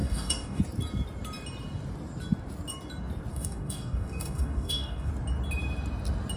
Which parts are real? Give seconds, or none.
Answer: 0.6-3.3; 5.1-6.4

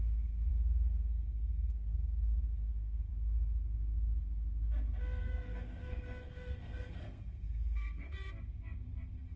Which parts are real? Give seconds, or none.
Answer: 0.0-0.5; 3.1-5.2; 8.3-9.4

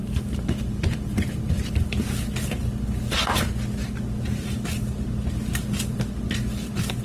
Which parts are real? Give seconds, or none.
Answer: 2.6-7.0

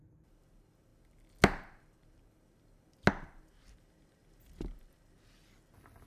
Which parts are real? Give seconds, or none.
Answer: 0.0-6.1